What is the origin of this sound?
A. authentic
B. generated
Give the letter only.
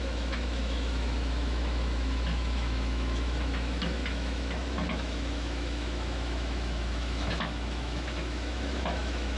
B